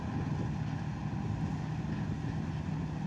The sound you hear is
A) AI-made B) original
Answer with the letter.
B